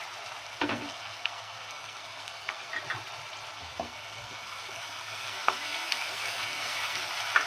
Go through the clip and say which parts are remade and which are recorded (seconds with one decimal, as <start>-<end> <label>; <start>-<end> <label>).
0.0-0.4 recorded; 0.4-2.7 remade; 2.7-3.5 recorded; 3.5-7.1 remade; 7.1-7.5 recorded

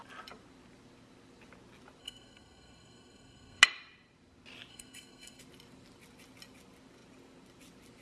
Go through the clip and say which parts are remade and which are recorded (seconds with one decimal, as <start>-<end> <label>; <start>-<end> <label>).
0.0-2.0 recorded; 2.0-3.6 remade; 3.6-4.7 recorded; 4.7-5.4 remade; 5.4-8.0 recorded

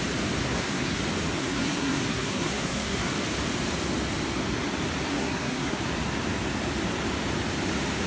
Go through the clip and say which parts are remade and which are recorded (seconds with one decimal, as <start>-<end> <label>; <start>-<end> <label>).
0.0-0.4 recorded; 0.4-1.0 remade; 1.0-1.4 recorded; 1.4-3.1 remade; 3.1-5.1 recorded; 5.1-5.8 remade; 5.8-8.1 recorded

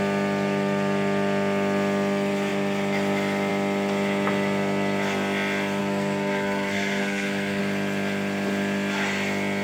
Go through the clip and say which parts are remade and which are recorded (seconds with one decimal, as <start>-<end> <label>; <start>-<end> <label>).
0.0-5.8 recorded; 5.8-7.6 remade; 7.6-9.6 recorded

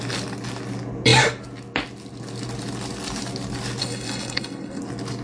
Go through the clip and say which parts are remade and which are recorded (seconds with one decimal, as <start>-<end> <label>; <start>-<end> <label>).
0.0-3.8 recorded; 3.8-4.8 remade; 4.8-5.2 recorded

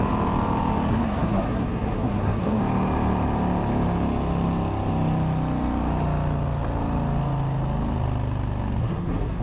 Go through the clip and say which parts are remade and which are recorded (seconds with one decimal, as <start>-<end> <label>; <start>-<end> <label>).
0.0-0.9 recorded; 0.9-2.6 remade; 2.6-8.8 recorded; 8.8-9.4 remade

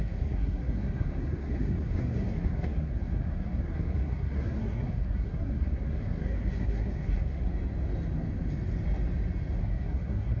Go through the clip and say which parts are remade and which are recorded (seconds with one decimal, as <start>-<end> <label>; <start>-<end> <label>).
0.0-7.5 remade; 7.5-9.6 recorded; 9.6-10.4 remade

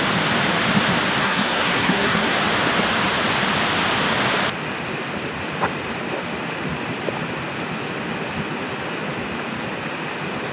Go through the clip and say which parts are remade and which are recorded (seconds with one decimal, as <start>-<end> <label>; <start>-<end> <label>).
0.0-1.2 recorded; 1.2-2.4 remade; 2.4-10.5 recorded